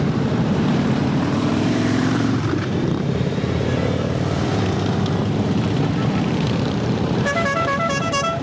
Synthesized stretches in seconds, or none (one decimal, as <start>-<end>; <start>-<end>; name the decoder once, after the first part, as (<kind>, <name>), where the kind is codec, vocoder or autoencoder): 0.0-8.4 (vocoder, BigVGAN v2)